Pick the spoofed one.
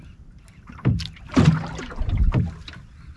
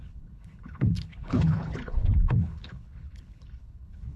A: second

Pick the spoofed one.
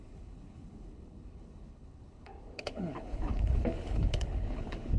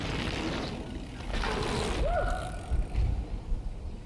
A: first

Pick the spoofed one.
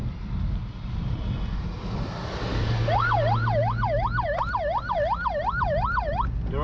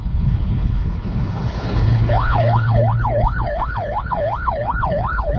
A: second